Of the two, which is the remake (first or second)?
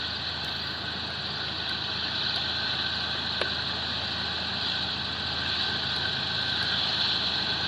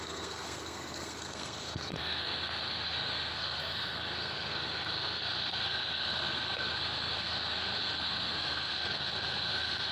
second